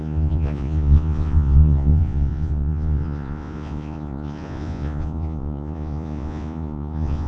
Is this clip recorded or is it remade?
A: remade